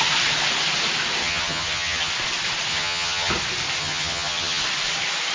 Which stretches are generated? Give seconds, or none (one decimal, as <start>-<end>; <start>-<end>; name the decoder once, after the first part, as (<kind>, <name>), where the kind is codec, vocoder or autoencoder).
1.2-2.1 (vocoder, HiFi-GAN); 2.7-3.3; 3.8-4.6